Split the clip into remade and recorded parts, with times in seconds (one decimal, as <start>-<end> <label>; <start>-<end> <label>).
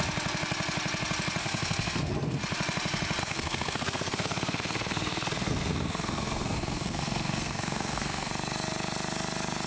0.0-1.4 recorded; 1.4-2.4 remade; 2.4-3.2 recorded; 3.2-8.3 remade; 8.3-9.7 recorded